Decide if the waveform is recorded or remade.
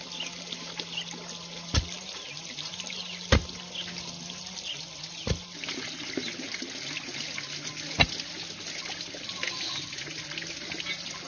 recorded